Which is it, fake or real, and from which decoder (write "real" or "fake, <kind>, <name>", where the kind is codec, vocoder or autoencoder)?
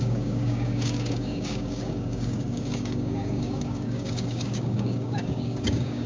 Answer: fake, codec, DAC